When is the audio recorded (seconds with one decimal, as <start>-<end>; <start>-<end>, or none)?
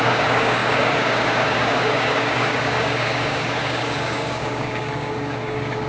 none